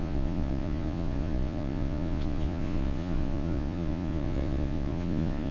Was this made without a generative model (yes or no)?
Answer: no